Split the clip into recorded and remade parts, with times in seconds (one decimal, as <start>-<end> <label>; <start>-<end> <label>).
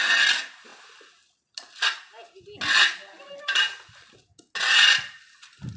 0.0-5.8 recorded